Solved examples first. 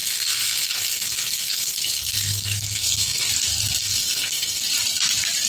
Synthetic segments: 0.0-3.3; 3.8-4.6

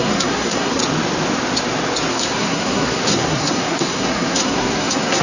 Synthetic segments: 0.0-0.8; 2.1-5.2

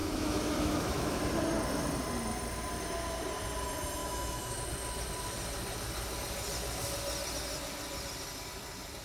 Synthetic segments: 0.0-1.2; 4.0-4.6

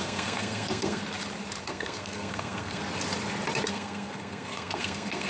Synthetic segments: 0.0-1.0; 1.6-2.8; 3.7-5.3

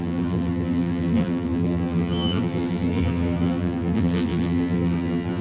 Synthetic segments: 0.0-5.4

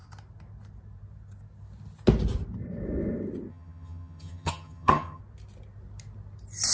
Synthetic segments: 3.5-5.2

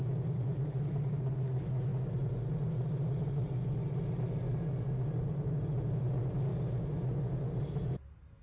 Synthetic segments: none